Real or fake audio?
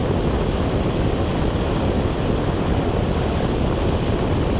real